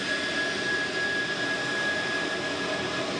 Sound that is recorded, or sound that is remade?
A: recorded